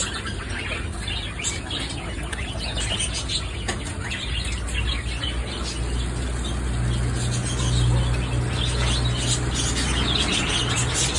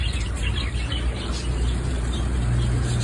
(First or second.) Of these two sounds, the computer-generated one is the second